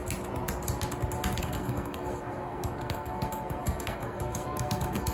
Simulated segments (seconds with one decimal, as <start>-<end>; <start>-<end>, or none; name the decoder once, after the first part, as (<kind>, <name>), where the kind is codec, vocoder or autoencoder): 1.4-5.1 (codec, SNAC)